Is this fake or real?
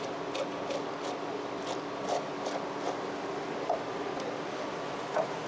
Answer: real